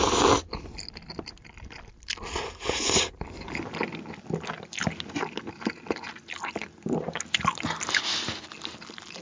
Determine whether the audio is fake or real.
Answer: real